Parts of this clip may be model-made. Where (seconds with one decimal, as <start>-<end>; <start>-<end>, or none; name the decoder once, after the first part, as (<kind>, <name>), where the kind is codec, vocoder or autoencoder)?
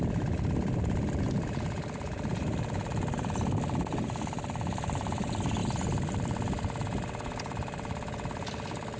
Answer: 0.0-5.6 (vocoder, BigVGAN v2); 7.4-9.0